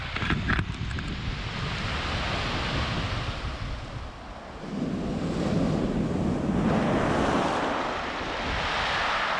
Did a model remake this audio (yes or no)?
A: no